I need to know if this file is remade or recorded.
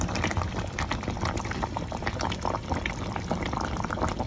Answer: remade